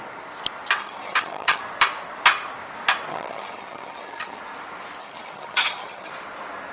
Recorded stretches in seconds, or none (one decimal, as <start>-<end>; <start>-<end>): 0.0-0.8; 1.6-3.1; 4.4-5.0; 6.1-6.7